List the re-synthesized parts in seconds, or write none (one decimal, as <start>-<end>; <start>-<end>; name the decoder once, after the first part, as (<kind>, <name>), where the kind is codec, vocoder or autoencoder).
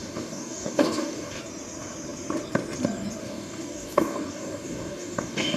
0.0-1.4 (codec, DAC); 3.2-5.6